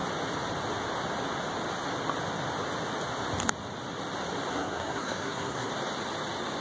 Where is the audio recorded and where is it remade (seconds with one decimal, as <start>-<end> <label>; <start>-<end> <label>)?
0.0-4.5 recorded; 4.5-5.7 remade; 5.7-6.6 recorded